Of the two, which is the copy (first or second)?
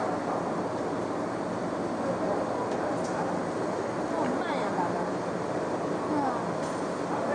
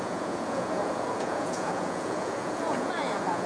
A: second